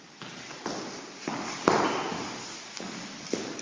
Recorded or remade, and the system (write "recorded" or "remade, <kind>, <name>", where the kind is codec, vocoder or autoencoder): recorded